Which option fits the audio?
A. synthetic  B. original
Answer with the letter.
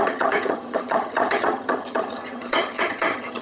A